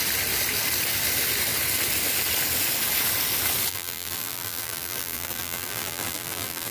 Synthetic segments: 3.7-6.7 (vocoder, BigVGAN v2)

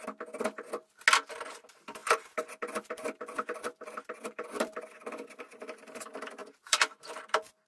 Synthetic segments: 2.0-5.3 (vocoder, BigVGAN v2); 6.4-7.2

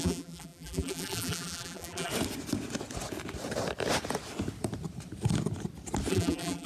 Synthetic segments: 0.0-2.1 (vocoder, BigVGAN v2); 6.1-6.7

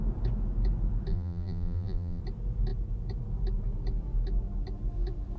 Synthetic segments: 1.1-2.2 (vocoder, BigVGAN v2)